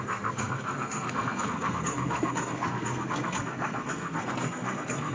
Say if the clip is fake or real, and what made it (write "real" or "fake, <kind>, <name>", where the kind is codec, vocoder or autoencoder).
fake, codec, SNAC